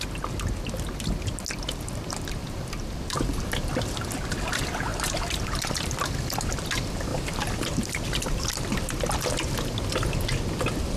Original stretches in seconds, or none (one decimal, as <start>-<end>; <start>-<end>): 0.0-2.4; 3.7-4.9; 5.9-7.1; 8.5-11.0